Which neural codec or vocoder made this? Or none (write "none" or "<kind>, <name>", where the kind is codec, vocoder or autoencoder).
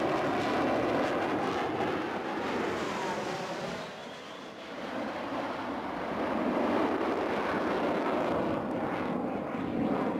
none